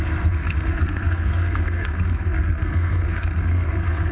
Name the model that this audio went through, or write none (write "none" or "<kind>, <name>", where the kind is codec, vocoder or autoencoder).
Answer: codec, SNAC